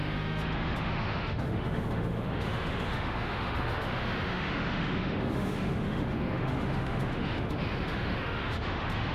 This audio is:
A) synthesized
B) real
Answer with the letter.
A